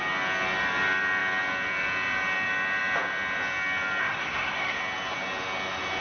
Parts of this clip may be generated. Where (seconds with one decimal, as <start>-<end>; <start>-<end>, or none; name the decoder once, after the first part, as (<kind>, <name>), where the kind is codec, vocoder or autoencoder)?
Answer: 4.0-4.8 (codec, SNAC)